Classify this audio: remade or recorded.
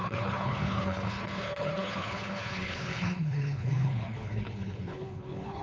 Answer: remade